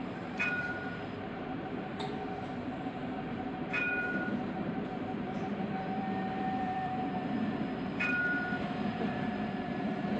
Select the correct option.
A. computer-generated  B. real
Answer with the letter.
A